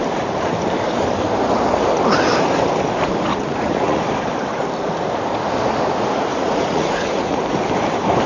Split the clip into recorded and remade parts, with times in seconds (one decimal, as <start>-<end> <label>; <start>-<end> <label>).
0.0-3.3 recorded; 3.3-4.0 remade; 4.0-6.3 recorded; 6.3-7.4 remade; 7.4-8.3 recorded